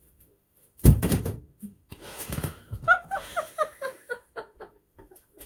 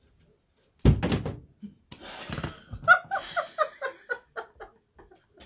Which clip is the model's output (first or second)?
first